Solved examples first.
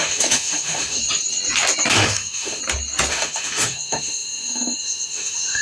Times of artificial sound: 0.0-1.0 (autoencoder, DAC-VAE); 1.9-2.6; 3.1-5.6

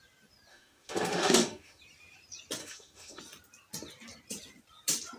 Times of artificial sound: 0.5-1.8 (autoencoder, DAC-VAE); 2.6-3.2

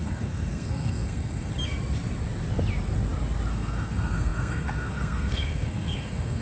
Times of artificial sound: 0.0-1.5 (codec, SNAC); 3.5-6.4